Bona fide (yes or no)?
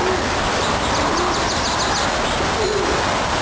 yes